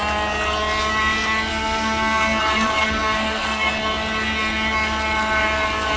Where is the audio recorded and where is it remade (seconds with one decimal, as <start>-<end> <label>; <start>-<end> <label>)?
0.0-1.5 recorded; 1.5-2.4 remade; 2.4-2.8 recorded; 2.8-3.7 remade; 3.7-6.0 recorded